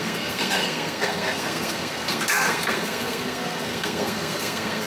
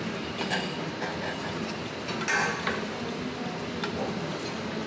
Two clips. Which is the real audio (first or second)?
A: second